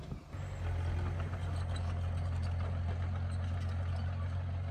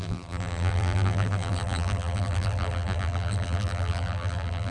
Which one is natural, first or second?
first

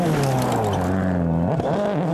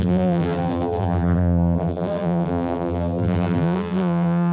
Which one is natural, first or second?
first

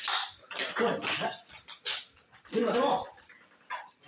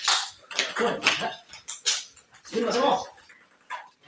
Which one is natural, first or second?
second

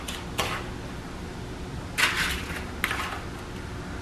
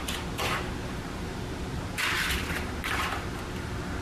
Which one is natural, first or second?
first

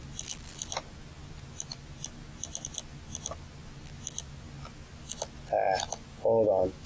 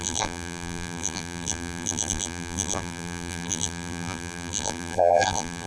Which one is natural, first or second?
first